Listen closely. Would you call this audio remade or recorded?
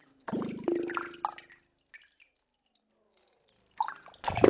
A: recorded